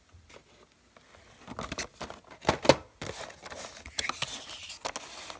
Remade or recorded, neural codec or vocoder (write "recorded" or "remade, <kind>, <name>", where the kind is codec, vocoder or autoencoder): recorded